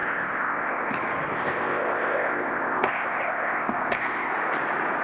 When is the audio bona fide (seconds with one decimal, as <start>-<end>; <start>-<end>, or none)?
0.9-1.3; 4.3-5.0